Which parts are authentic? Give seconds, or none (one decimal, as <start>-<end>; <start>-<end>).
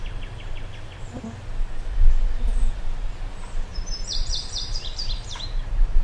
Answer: 0.0-3.7